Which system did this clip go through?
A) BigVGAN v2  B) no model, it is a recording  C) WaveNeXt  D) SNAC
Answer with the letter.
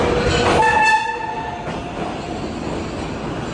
B